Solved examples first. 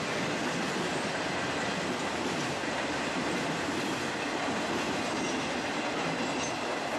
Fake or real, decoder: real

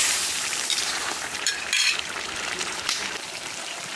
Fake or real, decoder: fake, vocoder, BigVGAN v2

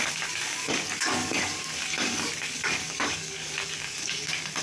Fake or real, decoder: fake, codec, DAC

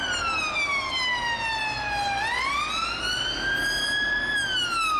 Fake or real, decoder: real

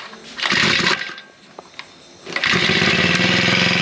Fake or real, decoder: real